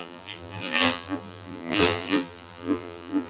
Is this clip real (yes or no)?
no